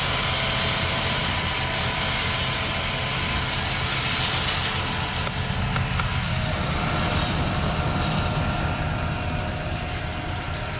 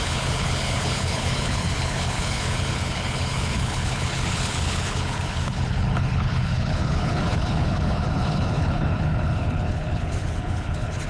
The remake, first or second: second